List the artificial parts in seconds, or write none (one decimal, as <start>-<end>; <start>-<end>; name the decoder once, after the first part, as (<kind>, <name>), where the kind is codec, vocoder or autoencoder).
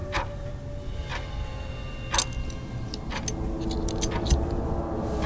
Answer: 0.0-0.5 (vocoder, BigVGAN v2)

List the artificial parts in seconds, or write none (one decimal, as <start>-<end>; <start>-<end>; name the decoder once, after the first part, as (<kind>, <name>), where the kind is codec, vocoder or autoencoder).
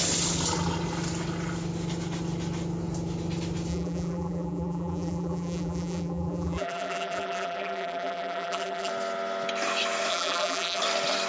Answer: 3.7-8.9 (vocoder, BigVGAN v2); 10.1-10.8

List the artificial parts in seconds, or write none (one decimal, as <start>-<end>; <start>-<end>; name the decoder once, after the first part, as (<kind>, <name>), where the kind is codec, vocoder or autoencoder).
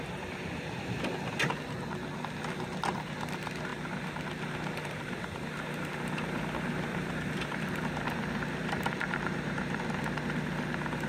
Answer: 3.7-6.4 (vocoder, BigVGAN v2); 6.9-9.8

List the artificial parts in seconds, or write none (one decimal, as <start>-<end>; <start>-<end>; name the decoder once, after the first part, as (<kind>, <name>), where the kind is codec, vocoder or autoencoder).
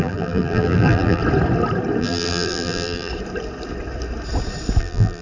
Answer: 0.0-1.2 (vocoder, BigVGAN v2); 2.0-3.1; 4.8-5.2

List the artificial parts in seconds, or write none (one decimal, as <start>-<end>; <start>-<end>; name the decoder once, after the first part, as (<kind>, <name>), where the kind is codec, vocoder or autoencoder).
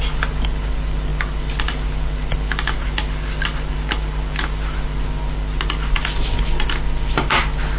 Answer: none